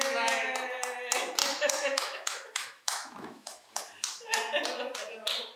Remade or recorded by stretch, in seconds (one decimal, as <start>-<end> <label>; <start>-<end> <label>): 0.0-1.4 recorded; 1.4-3.8 remade; 3.8-5.6 recorded